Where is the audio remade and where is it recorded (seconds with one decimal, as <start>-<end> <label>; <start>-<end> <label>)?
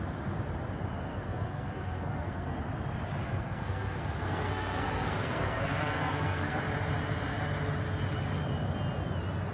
0.0-1.1 recorded; 1.1-2.6 remade; 2.6-3.2 recorded; 3.2-6.6 remade; 6.6-9.5 recorded